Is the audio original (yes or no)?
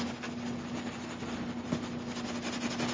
yes